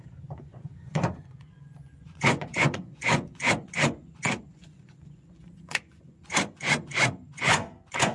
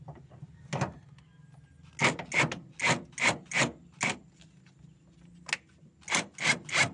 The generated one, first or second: first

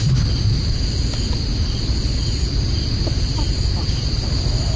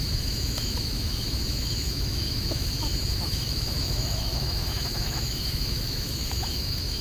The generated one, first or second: second